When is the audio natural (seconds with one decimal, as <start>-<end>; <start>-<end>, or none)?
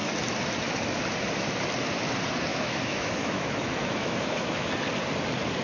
0.0-2.5; 4.7-5.6